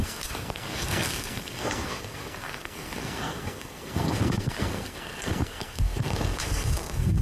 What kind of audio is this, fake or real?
fake